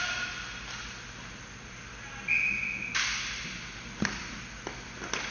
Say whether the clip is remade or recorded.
recorded